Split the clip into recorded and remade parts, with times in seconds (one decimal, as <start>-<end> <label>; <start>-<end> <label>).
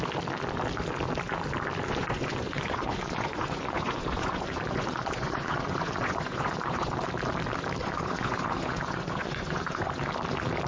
0.0-2.0 recorded; 2.0-6.9 remade; 6.9-7.8 recorded; 7.8-10.0 remade; 10.0-10.7 recorded